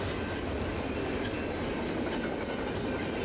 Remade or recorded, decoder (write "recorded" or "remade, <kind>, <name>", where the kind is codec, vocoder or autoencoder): recorded